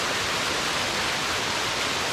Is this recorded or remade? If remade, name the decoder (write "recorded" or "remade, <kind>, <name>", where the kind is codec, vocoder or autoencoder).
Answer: recorded